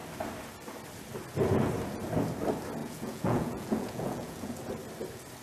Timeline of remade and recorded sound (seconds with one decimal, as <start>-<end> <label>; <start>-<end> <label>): 0.0-2.8 recorded; 2.8-4.5 remade; 4.5-5.4 recorded